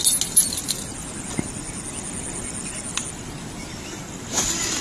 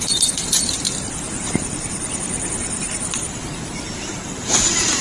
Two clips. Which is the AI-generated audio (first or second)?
second